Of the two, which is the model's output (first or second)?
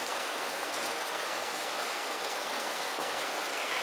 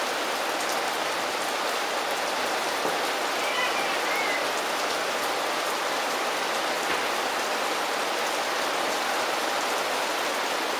first